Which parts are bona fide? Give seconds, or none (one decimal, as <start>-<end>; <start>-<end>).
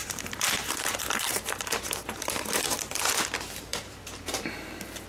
3.0-3.7